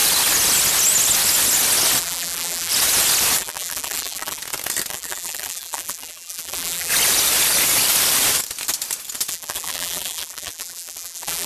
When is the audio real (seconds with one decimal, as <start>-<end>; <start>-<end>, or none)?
0.0-2.0; 2.7-3.4; 4.4-4.9; 6.9-9.3